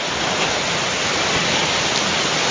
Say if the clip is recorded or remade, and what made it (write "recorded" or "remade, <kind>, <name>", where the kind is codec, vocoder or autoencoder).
recorded